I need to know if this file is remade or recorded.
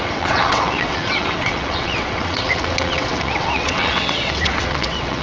remade